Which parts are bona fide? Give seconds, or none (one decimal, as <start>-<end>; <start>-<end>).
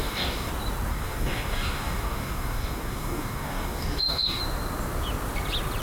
0.5-0.9; 4.4-5.8